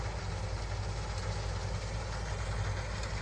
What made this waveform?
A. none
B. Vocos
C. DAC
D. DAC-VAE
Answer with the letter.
A